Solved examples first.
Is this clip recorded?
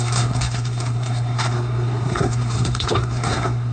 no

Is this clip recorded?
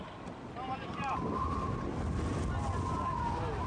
yes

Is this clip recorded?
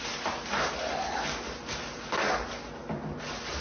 yes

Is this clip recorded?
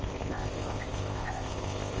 no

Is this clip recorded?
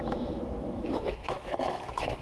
no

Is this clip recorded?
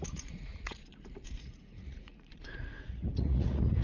no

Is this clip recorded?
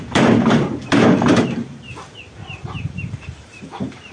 no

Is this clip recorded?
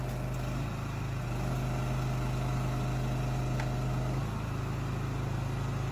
yes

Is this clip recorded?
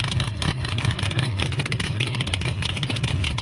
no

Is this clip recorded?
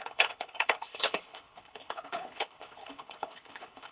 no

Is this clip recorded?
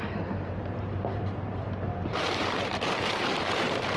no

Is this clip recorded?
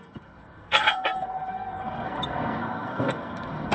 no